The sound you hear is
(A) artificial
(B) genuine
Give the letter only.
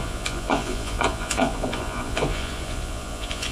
A